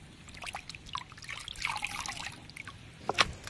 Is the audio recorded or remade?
recorded